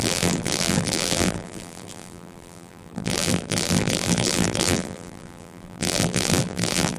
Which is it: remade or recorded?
remade